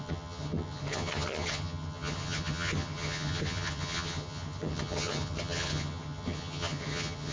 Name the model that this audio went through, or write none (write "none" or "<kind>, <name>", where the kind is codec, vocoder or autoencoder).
vocoder, HiFi-GAN